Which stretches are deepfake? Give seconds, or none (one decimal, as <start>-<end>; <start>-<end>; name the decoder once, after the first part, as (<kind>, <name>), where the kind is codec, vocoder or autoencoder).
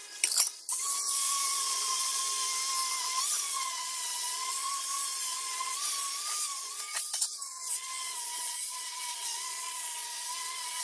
0.7-2.2 (vocoder, Vocos); 3.0-10.8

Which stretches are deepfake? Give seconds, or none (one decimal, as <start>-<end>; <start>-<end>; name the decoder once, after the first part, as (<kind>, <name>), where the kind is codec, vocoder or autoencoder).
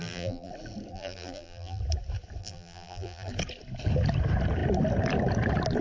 0.0-0.5 (vocoder, BigVGAN v2); 0.9-1.8; 2.4-3.3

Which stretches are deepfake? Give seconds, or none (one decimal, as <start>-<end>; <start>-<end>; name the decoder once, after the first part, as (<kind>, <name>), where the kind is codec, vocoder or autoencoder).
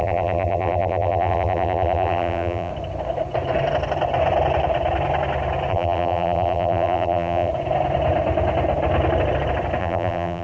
0.0-2.7 (vocoder, BigVGAN v2); 5.7-7.5; 9.8-10.4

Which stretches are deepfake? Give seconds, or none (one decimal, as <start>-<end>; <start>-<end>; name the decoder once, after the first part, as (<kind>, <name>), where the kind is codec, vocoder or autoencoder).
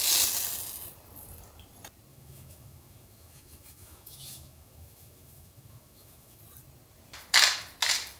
2.1-6.4 (autoencoder, DAC-VAE)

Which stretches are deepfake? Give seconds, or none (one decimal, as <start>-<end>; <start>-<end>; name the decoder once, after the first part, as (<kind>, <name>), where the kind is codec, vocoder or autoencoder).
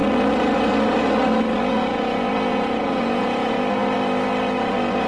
1.7-3.5 (vocoder, Vocos)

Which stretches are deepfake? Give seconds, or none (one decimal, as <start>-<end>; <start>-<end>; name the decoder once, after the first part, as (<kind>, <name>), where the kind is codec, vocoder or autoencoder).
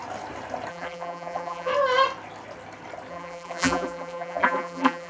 0.7-1.7 (vocoder, BigVGAN v2); 3.1-5.1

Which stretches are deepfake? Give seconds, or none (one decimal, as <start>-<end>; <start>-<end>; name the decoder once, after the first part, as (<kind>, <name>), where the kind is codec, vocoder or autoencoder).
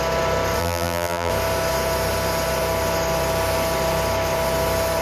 0.6-1.3 (vocoder, BigVGAN v2)